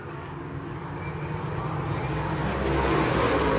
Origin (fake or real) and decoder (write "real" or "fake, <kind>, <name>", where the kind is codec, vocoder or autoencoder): real